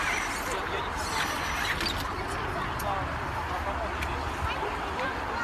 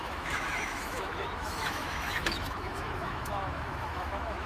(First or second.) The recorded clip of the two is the first